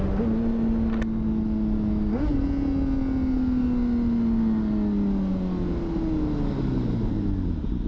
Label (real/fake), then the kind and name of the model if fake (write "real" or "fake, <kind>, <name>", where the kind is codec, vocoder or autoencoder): real